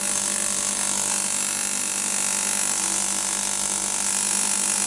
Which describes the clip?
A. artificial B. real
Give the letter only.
B